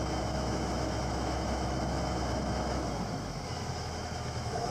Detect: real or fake fake